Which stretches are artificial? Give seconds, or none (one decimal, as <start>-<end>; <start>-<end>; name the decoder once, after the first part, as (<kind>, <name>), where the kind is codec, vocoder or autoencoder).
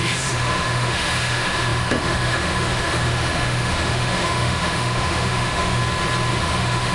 0.0-5.8 (autoencoder, DAC-VAE); 6.3-6.9